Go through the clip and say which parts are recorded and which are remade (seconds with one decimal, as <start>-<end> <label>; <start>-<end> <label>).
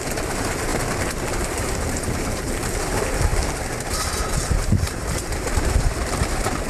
0.0-0.7 remade; 0.7-1.3 recorded; 1.3-6.7 remade